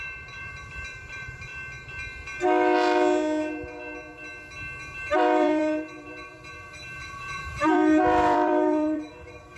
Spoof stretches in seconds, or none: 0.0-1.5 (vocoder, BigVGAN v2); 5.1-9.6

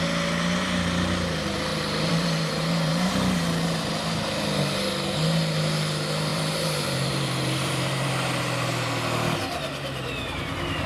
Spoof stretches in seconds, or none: 1.7-3.9 (vocoder, BigVGAN v2); 6.3-8.1

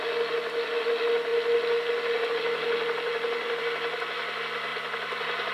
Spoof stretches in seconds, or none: 4.7-5.5 (vocoder, BigVGAN v2)

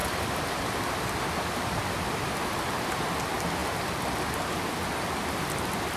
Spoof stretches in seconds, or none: none

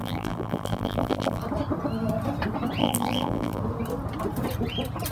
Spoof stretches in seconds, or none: 0.0-1.4 (vocoder, BigVGAN v2); 2.8-3.6

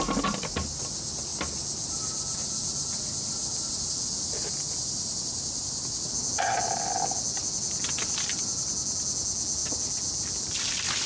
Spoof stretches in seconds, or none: none

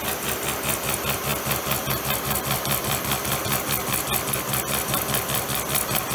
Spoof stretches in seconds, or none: none

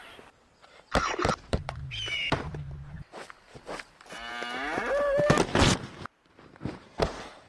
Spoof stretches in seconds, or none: 0.0-1.8 (vocoder, BigVGAN v2); 6.3-7.5